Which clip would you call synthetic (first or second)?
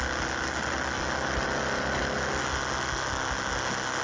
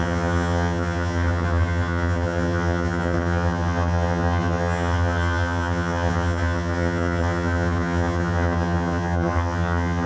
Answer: second